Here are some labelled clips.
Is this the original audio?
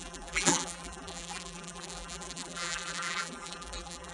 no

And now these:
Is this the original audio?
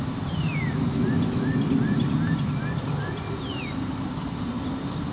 no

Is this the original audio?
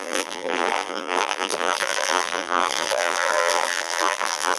no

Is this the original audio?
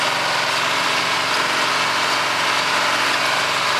yes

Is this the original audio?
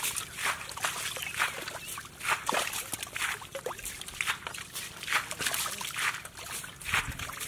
yes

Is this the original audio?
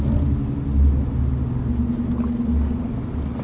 yes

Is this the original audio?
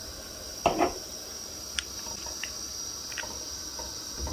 yes